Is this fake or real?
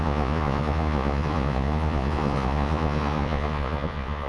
fake